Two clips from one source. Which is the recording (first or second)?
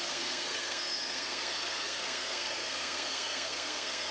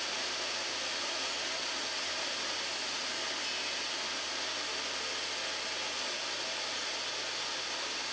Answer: second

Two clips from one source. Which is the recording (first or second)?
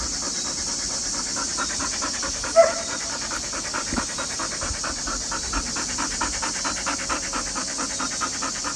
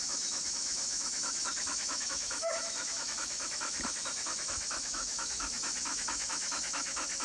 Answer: first